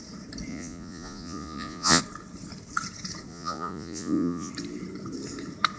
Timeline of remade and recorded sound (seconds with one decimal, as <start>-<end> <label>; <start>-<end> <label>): 0.0-0.5 recorded; 0.5-2.0 remade; 2.0-3.3 recorded; 3.3-4.5 remade; 4.5-5.8 recorded